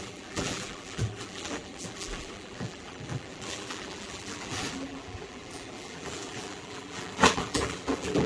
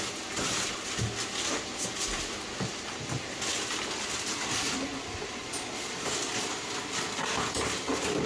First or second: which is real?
second